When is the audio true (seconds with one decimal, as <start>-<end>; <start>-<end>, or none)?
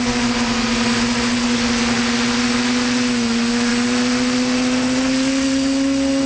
0.0-6.3